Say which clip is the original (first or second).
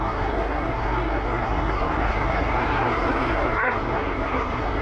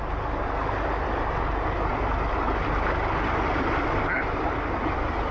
second